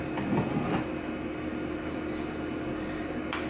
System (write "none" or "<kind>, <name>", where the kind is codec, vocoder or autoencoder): none